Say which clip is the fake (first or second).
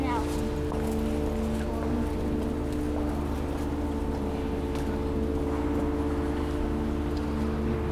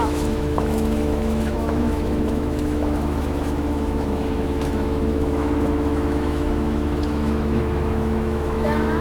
second